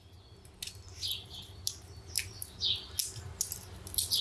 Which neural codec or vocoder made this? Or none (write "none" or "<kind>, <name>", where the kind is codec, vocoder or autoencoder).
none